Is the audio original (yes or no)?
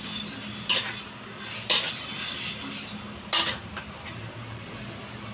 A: yes